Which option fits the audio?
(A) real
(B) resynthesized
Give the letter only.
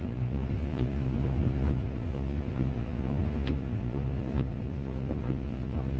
B